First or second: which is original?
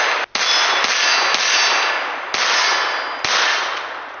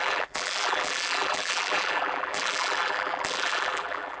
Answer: first